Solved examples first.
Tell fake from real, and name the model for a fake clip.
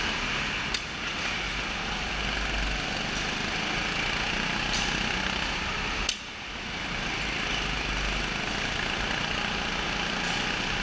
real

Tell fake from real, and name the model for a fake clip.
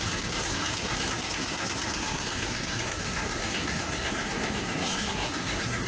fake, codec, SNAC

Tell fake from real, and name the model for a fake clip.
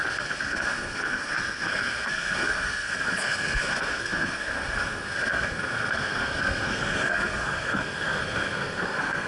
fake, codec, SNAC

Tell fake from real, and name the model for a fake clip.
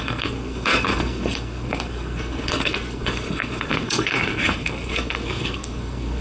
fake, codec, SNAC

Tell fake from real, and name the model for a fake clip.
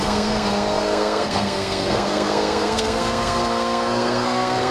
fake, codec, SNAC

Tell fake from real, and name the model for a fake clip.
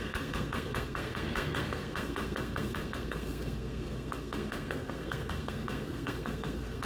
fake, codec, SNAC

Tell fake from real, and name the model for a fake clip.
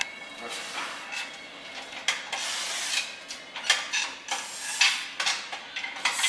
real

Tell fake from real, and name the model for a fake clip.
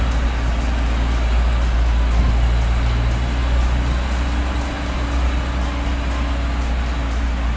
real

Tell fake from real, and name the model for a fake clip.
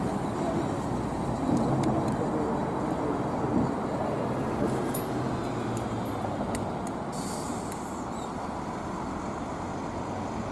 real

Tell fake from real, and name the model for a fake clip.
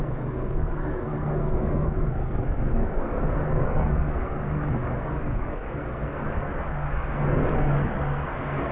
fake, codec, SNAC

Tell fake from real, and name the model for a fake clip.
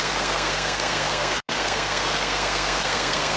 fake, codec, SNAC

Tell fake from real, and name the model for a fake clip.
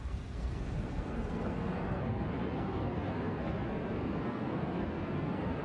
fake, codec, SNAC